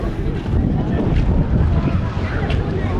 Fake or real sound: fake